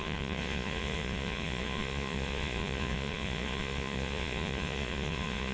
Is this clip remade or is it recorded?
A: remade